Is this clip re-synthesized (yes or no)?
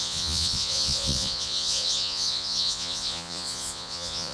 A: yes